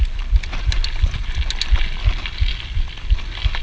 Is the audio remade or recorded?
recorded